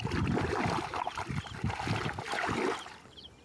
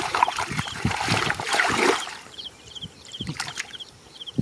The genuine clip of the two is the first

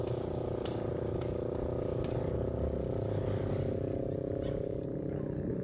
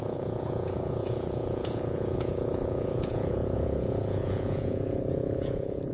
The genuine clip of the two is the first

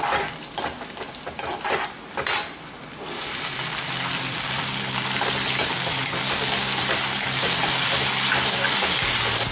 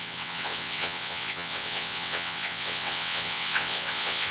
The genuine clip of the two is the first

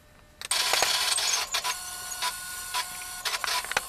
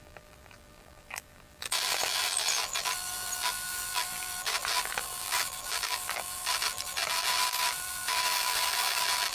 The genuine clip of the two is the first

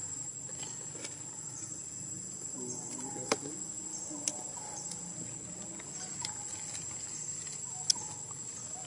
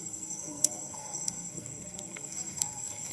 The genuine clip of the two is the first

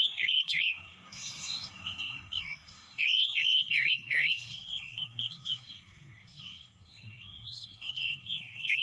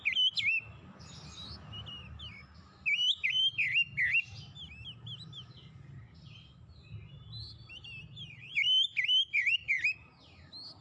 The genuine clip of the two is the second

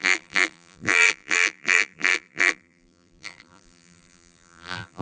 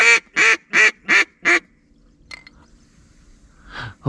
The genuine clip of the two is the second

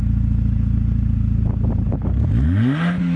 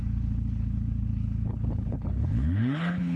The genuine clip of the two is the first